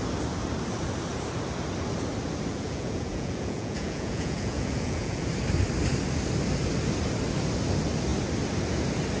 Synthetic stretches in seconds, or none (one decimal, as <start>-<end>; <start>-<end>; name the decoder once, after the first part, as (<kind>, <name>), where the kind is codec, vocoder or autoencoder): 2.5-5.3 (vocoder, Vocos)